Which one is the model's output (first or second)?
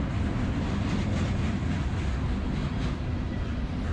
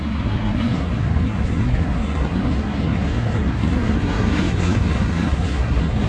second